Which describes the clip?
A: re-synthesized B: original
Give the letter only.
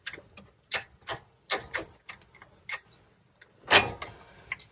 B